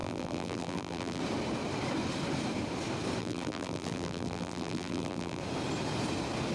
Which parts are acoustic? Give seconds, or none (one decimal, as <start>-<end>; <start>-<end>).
1.2-3.2; 5.4-6.5